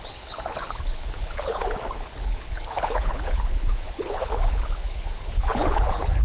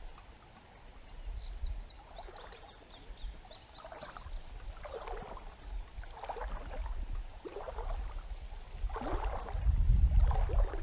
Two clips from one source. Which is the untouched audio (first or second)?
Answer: second